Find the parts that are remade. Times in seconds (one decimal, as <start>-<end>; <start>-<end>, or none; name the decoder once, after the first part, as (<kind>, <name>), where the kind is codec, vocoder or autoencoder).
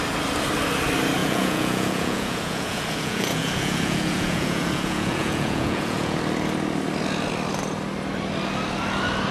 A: 1.2-6.2 (vocoder, Vocos)